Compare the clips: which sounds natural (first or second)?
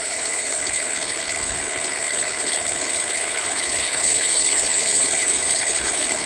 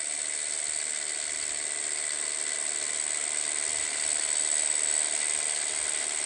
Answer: second